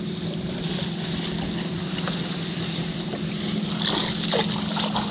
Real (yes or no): yes